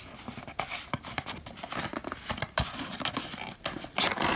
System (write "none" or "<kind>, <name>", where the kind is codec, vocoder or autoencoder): none